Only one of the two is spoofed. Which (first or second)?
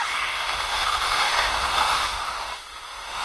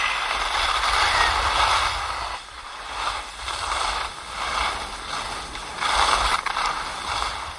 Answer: first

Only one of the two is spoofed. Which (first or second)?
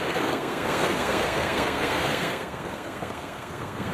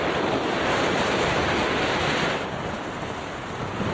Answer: first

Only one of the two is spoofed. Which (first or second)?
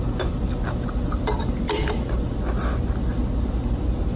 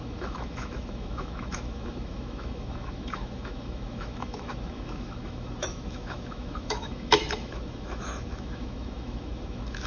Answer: second